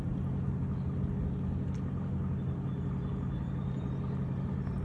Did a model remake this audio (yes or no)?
no